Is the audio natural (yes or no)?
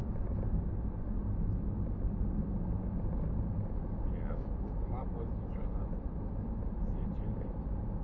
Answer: yes